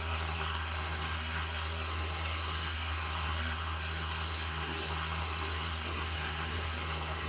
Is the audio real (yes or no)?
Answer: no